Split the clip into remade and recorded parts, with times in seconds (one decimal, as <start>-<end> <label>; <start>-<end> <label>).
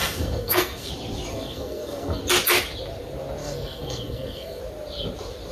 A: 0.0-0.9 remade; 0.9-1.3 recorded; 1.3-2.2 remade; 2.2-3.4 recorded; 3.4-4.6 remade; 4.6-5.5 recorded